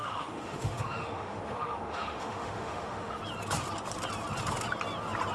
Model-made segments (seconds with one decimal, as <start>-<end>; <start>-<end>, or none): 0.0-3.2